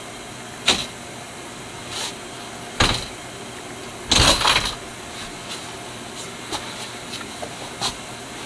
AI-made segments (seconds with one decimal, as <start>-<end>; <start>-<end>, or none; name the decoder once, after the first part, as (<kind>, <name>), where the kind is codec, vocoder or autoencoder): none